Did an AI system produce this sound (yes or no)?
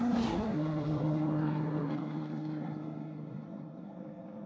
yes